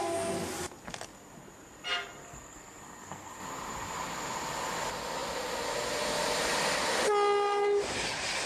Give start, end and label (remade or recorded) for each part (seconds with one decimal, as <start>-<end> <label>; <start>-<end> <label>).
0.0-2.2 recorded; 2.2-3.3 remade; 3.3-8.5 recorded